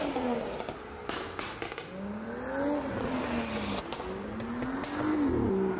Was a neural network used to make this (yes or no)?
no